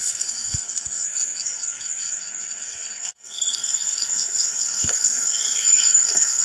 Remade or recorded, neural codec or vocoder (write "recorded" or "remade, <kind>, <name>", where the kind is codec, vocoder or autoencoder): remade, codec, SNAC